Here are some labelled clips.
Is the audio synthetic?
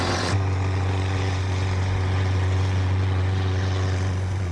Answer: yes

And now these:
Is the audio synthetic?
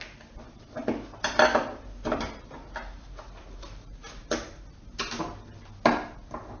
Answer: no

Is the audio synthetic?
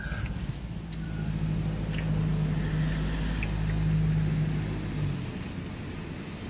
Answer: no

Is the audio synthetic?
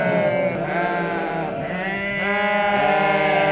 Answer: no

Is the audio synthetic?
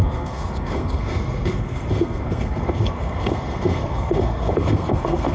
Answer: yes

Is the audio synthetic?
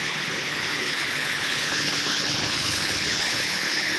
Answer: yes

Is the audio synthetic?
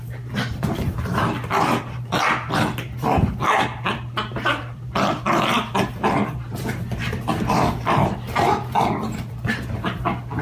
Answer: yes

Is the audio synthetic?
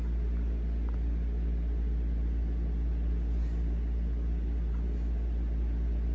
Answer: no